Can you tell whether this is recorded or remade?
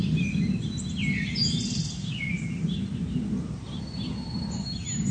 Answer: recorded